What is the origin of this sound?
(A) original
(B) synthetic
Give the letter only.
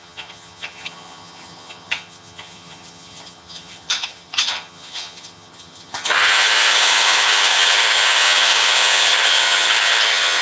B